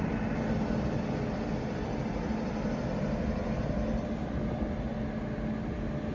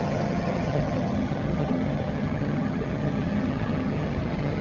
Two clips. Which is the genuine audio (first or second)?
first